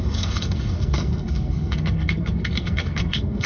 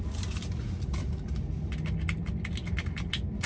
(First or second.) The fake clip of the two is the first